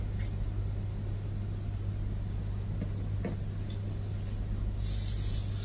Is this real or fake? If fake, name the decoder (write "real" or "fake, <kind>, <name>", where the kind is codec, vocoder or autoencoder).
real